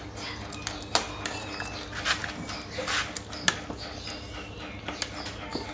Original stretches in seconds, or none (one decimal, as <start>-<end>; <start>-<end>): 0.0-5.7